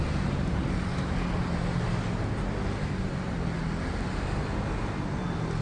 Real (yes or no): yes